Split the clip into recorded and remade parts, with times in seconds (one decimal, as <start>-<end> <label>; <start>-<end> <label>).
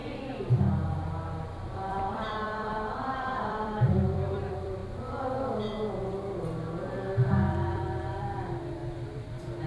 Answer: 0.0-1.7 recorded; 1.7-4.8 remade; 4.8-7.5 recorded; 7.5-9.7 remade